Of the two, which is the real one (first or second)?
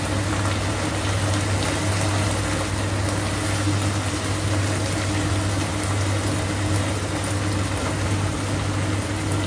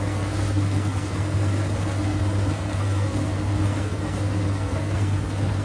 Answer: first